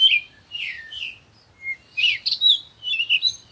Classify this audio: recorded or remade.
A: recorded